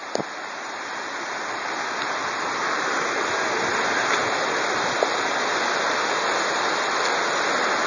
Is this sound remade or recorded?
recorded